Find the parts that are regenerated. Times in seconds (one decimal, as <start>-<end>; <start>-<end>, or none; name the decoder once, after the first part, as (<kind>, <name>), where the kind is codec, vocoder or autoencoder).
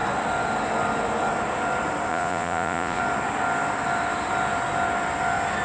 2.1-3.0 (vocoder, Vocos)